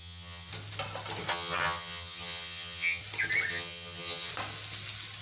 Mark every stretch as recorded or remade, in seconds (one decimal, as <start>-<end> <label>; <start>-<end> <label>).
0.0-0.5 remade; 0.5-1.3 recorded; 1.3-3.0 remade; 3.0-3.5 recorded; 3.5-4.3 remade; 4.3-5.2 recorded